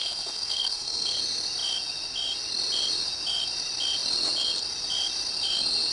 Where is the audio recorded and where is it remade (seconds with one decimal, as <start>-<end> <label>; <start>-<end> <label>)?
0.0-1.2 remade; 1.2-5.9 recorded